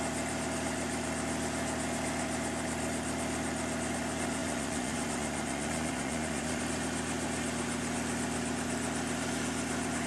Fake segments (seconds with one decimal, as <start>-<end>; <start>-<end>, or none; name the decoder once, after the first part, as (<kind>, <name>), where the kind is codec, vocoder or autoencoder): 4.4-6.6 (vocoder, Vocos)